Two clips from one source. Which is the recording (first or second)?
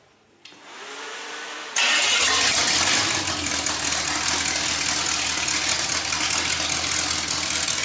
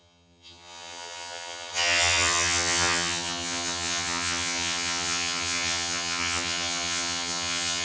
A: first